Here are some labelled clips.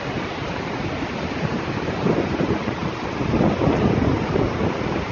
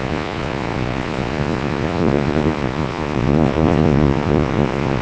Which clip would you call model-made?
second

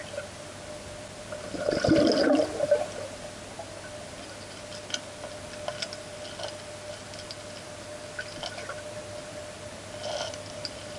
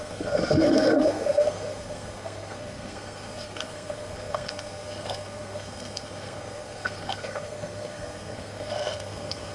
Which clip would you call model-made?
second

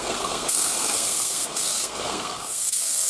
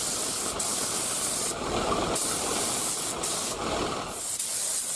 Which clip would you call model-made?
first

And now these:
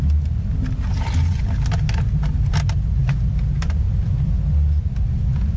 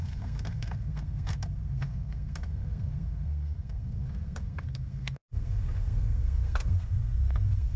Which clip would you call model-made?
second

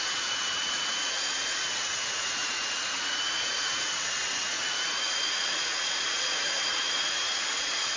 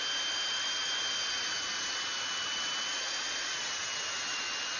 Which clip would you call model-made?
first